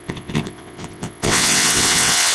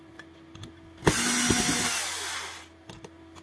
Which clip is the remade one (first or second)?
first